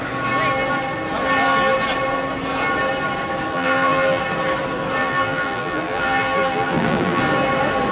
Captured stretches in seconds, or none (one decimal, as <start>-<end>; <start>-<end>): 0.0-3.5; 4.2-5.0; 7.2-7.9